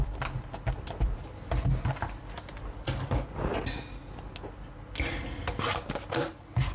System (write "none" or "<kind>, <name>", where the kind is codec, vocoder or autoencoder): none